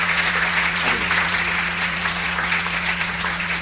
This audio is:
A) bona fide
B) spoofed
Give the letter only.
B